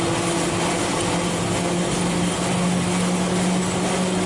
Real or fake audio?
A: real